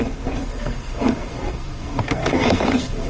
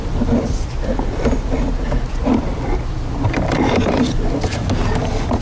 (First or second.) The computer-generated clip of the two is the first